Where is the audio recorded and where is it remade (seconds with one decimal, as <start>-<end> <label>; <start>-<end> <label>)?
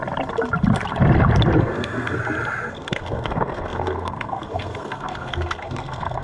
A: 0.0-1.6 recorded; 1.6-2.2 remade; 2.2-2.7 recorded; 2.7-6.2 remade